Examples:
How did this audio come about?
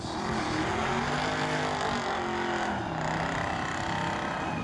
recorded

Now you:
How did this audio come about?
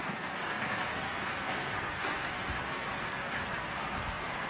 remade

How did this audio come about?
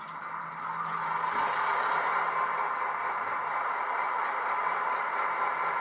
recorded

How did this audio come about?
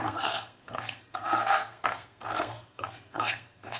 remade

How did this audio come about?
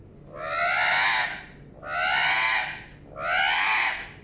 recorded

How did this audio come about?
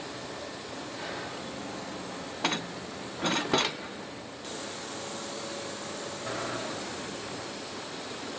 recorded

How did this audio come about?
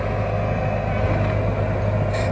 recorded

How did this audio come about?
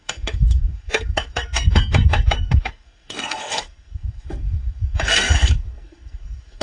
remade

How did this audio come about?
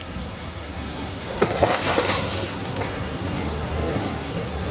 remade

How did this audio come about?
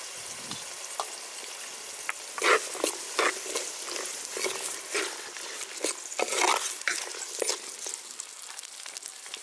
recorded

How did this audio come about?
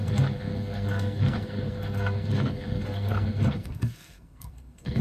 remade